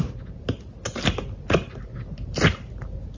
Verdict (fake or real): real